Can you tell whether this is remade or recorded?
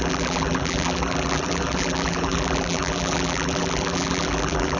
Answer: remade